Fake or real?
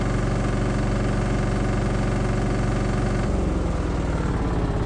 real